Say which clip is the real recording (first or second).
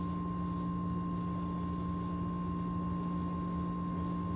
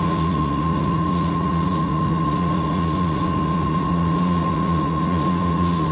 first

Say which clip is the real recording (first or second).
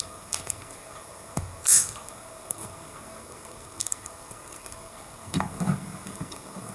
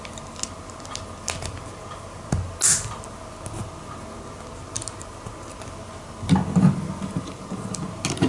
second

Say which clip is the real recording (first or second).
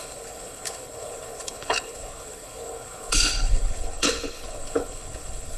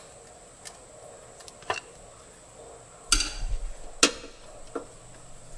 second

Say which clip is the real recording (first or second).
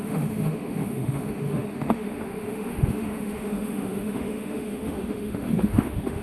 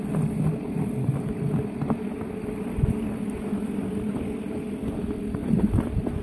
second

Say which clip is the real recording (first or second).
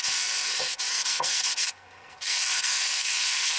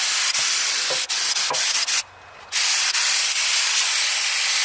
second